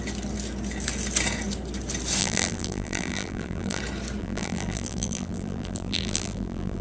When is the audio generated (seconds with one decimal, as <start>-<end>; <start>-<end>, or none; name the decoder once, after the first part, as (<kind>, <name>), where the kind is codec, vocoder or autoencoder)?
2.2-3.8 (vocoder, BigVGAN v2); 4.2-6.8